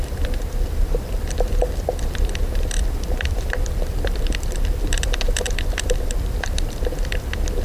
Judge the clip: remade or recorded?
remade